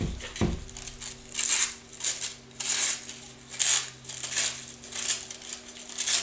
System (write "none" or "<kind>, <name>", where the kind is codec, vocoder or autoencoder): none